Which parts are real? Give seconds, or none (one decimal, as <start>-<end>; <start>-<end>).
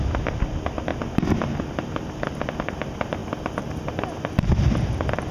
0.0-5.3